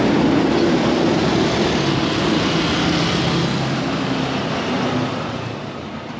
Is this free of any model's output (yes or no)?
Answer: yes